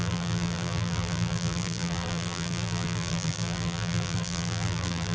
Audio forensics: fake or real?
fake